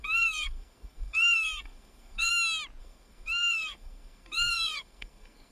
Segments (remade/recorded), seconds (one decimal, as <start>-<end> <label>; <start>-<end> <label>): 0.0-2.3 remade; 2.3-2.8 recorded; 2.8-5.5 remade